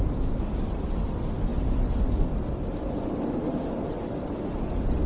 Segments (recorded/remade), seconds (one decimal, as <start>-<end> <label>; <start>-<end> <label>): 0.0-5.1 recorded